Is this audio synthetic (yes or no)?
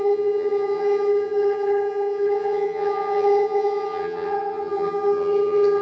yes